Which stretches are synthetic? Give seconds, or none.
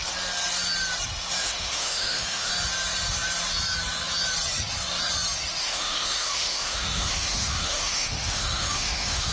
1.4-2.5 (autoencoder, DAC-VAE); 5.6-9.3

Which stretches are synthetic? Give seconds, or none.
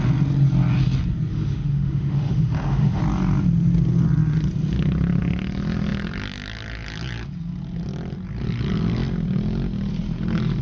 1.3-3.0 (autoencoder, DAC-VAE)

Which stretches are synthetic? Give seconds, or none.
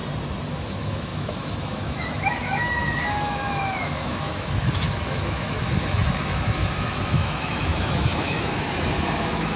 0.5-9.6 (autoencoder, DAC-VAE)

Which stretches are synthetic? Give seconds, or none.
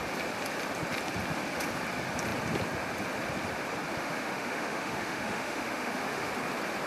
4.0-6.3 (autoencoder, DAC-VAE)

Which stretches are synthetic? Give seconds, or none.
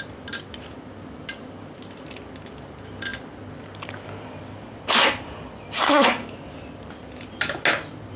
none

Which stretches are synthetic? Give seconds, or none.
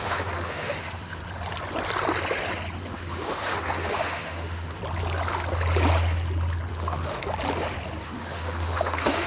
0.0-1.2 (autoencoder, DAC-VAE); 2.8-4.8; 6.7-7.2; 8.0-9.3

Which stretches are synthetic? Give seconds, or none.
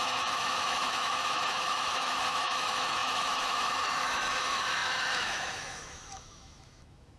0.0-7.2 (autoencoder, DAC-VAE)